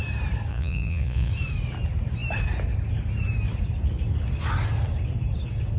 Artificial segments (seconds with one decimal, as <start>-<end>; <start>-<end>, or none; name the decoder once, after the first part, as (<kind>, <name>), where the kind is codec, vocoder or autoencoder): 0.5-1.3 (vocoder, Vocos)